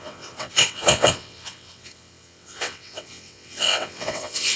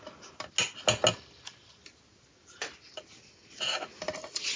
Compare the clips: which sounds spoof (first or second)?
first